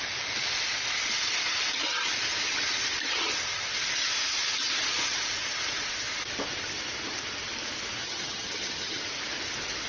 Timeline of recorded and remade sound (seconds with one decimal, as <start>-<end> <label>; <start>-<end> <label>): 0.0-8.0 recorded; 8.0-9.0 remade; 9.0-9.9 recorded